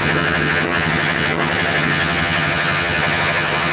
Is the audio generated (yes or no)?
yes